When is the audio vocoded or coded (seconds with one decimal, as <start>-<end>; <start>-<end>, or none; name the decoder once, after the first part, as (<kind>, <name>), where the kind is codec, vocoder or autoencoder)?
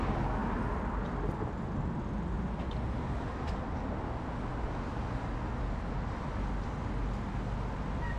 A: none